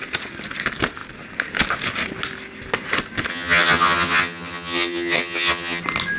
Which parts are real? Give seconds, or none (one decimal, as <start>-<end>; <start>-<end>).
0.0-3.3; 5.8-6.2